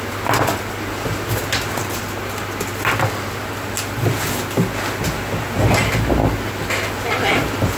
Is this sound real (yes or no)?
yes